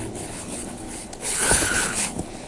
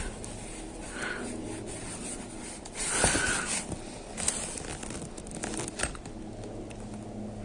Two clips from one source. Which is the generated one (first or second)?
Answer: first